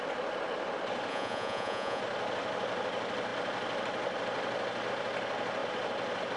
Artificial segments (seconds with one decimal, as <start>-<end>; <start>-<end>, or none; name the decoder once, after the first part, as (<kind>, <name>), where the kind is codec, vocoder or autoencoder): 1.1-2.0 (vocoder, Vocos)